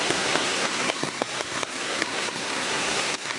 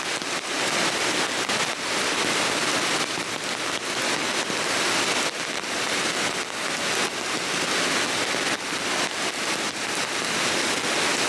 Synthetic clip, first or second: first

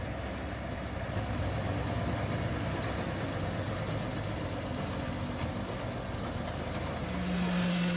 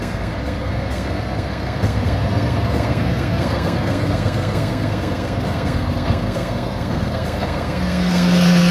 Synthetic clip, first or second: second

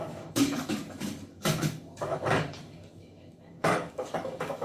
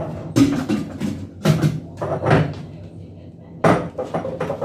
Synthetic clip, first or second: first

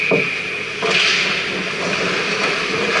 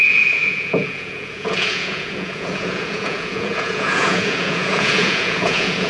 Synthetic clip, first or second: second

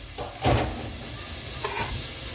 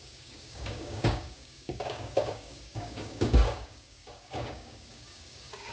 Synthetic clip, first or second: second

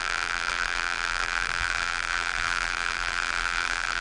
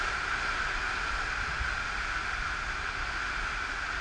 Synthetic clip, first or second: first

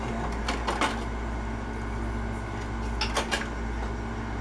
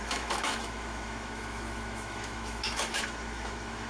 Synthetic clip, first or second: second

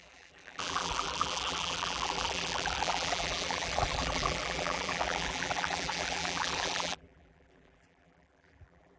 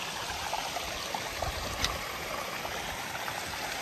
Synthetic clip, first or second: first